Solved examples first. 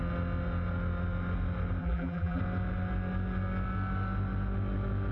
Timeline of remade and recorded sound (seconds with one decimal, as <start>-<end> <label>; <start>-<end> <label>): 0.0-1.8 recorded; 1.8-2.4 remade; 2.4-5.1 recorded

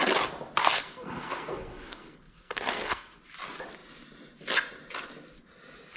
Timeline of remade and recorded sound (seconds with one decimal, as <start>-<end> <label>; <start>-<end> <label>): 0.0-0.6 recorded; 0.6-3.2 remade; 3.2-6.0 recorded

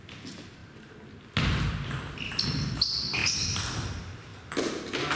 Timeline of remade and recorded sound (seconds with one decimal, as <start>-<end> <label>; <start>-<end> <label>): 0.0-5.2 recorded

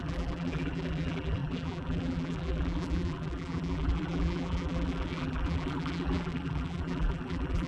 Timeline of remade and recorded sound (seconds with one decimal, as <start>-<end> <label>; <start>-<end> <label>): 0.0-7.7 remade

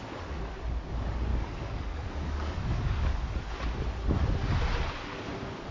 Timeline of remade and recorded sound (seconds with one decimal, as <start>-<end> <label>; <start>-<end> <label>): 0.0-1.3 recorded; 1.3-3.5 remade; 3.5-5.7 recorded